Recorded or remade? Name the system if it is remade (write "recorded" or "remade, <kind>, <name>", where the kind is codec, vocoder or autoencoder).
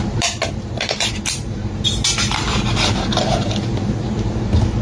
remade, vocoder, BigVGAN v2